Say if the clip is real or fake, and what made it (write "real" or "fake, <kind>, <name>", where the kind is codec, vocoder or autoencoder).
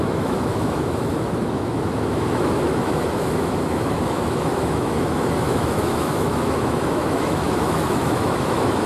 fake, autoencoder, DAC-VAE